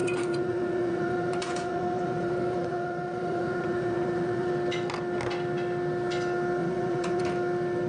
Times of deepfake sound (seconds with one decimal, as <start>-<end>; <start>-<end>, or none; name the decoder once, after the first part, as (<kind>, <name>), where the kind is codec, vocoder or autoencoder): 0.0-4.5 (vocoder, Vocos); 6.6-7.2